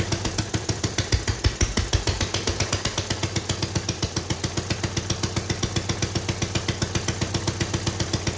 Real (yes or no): yes